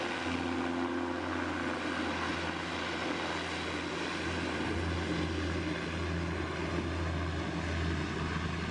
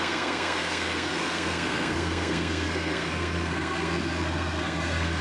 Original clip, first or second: first